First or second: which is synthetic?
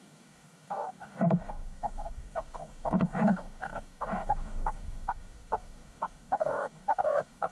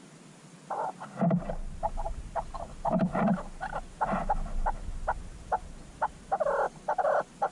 first